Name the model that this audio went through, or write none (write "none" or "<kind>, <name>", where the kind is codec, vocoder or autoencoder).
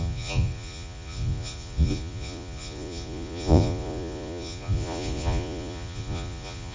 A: vocoder, Vocos